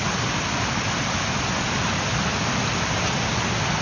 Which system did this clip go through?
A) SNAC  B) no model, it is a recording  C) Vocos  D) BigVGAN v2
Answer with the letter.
B